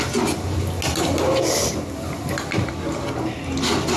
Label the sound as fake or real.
real